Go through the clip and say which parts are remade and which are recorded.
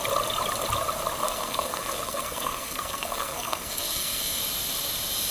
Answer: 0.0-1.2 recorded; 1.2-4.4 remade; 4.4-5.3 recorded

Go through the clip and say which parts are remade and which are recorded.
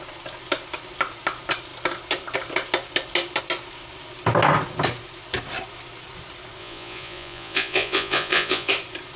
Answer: 0.0-6.6 recorded; 6.6-8.7 remade; 8.7-9.2 recorded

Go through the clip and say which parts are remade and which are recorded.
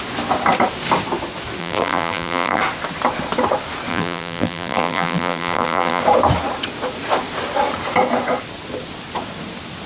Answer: 0.0-1.6 recorded; 1.6-2.6 remade; 2.6-3.9 recorded; 3.9-6.0 remade; 6.0-9.9 recorded